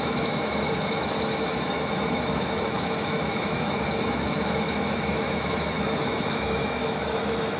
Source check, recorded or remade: remade